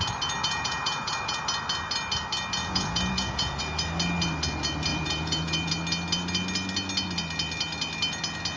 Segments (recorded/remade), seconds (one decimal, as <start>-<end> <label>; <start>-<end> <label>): 0.0-0.4 recorded; 0.4-1.4 remade; 1.4-2.6 recorded; 2.6-3.6 remade; 3.6-4.9 recorded; 4.9-5.7 remade; 5.7-8.6 recorded